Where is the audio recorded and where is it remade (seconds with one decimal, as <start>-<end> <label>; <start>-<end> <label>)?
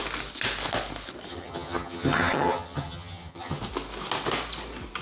0.0-1.3 recorded; 1.3-3.6 remade; 3.6-5.0 recorded